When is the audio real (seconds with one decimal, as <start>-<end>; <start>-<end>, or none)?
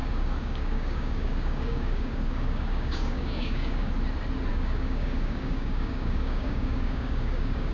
3.9-4.5